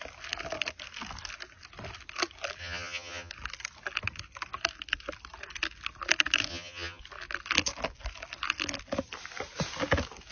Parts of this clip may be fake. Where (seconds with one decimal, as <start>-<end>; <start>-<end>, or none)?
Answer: 2.6-3.3; 6.5-7.0